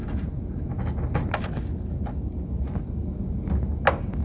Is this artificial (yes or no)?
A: no